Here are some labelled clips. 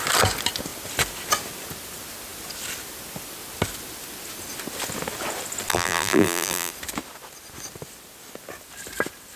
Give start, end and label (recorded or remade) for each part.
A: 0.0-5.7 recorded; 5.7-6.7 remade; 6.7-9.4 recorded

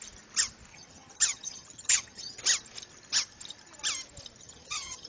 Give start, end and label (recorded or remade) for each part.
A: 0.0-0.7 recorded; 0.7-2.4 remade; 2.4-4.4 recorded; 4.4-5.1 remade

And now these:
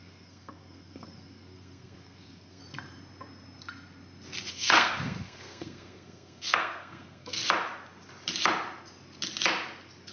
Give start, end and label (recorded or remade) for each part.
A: 0.0-2.6 remade; 2.6-4.5 recorded; 4.5-7.4 remade; 7.4-10.1 recorded